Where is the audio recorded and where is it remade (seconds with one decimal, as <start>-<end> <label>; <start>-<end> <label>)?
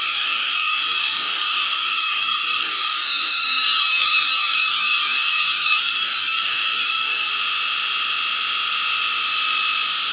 0.0-7.3 remade; 7.3-10.1 recorded